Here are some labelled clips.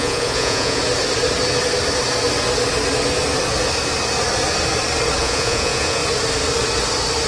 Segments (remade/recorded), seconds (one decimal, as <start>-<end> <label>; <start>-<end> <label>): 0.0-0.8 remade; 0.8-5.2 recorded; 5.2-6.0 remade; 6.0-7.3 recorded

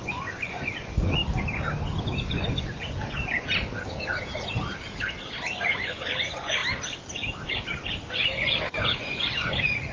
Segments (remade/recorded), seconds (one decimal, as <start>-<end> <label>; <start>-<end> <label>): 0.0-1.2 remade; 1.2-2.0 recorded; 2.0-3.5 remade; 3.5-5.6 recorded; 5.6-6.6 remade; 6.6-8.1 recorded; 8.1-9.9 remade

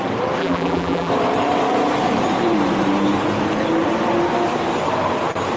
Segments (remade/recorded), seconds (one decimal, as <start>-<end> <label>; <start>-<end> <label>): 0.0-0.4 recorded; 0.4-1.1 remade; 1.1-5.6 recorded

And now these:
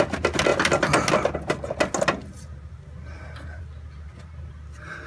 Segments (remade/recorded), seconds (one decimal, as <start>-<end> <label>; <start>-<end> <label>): 0.0-5.1 recorded